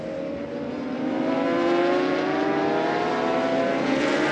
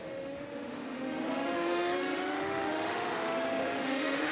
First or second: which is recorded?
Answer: first